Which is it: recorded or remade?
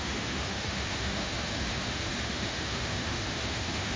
remade